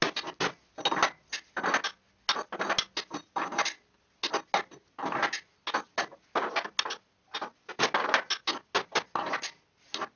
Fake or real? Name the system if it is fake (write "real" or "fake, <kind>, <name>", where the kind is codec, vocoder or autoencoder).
real